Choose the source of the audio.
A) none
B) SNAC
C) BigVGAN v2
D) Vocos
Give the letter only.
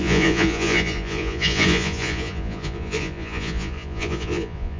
D